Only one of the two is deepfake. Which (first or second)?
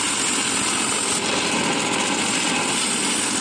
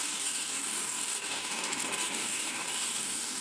second